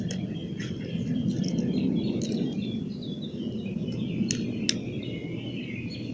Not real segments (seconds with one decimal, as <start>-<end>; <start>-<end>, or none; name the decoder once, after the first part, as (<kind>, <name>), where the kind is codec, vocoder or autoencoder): 0.4-4.1 (vocoder, BigVGAN v2)

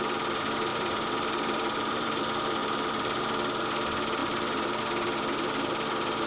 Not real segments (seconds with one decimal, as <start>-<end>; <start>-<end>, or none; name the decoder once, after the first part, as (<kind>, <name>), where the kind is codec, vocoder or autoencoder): 0.7-2.2 (vocoder, BigVGAN v2); 2.6-3.2; 4.2-4.8

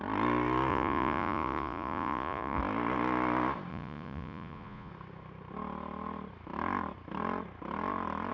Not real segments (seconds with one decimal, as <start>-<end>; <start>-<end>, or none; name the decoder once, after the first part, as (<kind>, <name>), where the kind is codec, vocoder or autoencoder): 0.7-2.6 (vocoder, Vocos); 3.7-4.9

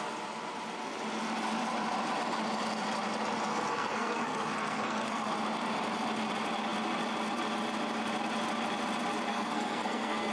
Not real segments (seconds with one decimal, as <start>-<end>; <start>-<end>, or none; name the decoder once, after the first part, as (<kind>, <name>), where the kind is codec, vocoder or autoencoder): 3.5-5.2 (codec, SNAC); 9.3-10.3

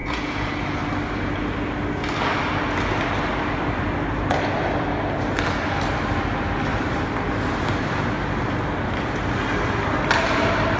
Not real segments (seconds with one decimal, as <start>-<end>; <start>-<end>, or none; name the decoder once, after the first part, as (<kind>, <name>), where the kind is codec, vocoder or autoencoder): 0.0-0.8 (vocoder, Vocos)

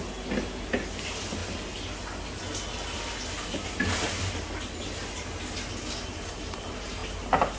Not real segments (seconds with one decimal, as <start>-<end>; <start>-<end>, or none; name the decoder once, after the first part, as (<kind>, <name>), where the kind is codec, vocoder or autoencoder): none

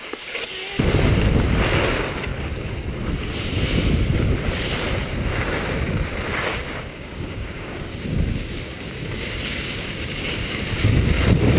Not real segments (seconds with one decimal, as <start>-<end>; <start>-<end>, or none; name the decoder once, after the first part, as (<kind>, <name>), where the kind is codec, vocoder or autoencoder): 5.0-6.1 (codec, DAC); 6.5-10.7

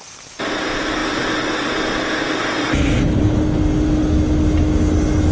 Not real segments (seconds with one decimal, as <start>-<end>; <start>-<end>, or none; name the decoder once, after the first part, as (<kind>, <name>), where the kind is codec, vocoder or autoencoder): none